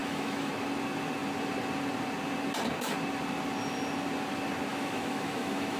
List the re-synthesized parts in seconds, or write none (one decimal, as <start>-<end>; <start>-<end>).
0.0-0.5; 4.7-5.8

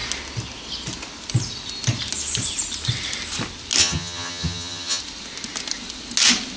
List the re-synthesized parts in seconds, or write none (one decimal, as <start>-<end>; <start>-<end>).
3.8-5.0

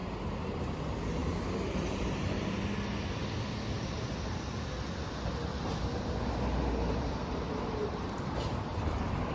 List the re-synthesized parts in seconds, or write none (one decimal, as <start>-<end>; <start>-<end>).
0.0-0.7; 1.2-2.7; 5.4-9.3

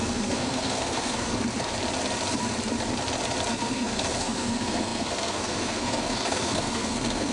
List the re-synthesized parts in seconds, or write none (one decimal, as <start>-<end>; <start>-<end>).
0.0-1.3; 3.5-7.3

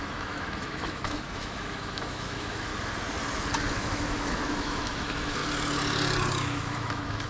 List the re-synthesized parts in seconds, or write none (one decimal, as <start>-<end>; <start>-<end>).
0.0-2.7; 3.7-5.4; 6.4-7.3

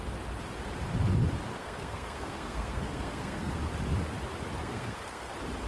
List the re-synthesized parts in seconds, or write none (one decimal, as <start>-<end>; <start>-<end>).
1.5-3.6; 4.6-5.3

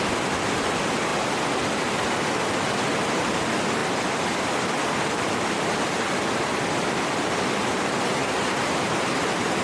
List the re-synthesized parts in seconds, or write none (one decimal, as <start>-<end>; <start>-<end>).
8.2-9.6

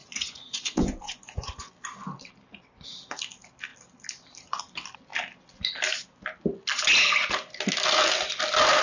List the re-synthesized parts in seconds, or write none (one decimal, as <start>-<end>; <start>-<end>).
0.0-1.7